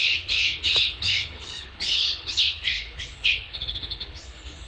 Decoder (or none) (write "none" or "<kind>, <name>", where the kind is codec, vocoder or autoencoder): codec, HILCodec